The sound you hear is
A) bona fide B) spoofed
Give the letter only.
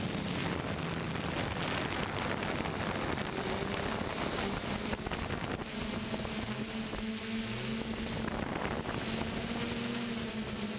A